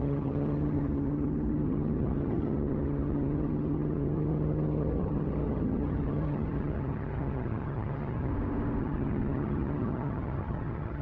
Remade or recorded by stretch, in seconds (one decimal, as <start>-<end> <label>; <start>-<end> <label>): 0.0-8.3 remade; 8.3-8.8 recorded; 8.8-11.0 remade